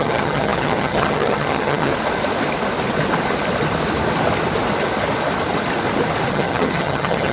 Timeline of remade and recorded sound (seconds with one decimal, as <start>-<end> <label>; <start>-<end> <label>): 0.0-1.9 remade; 1.9-6.3 recorded; 6.3-7.3 remade